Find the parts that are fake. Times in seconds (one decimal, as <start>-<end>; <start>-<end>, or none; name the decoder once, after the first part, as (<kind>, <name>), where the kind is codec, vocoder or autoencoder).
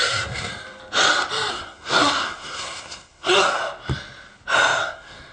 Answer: 0.0-0.5 (codec, SNAC); 1.5-3.6; 4.8-5.3